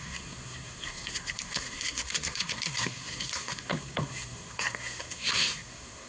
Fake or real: fake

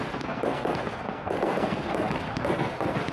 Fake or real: fake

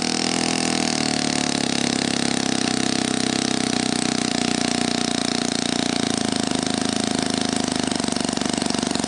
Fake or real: real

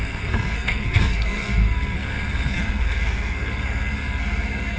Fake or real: fake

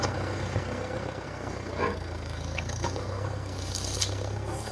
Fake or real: fake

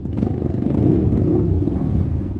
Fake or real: fake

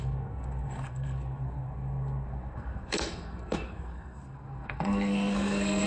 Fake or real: fake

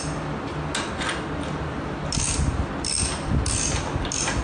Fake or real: real